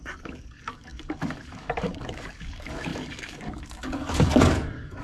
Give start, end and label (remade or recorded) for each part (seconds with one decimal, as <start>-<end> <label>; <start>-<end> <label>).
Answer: 0.0-5.0 remade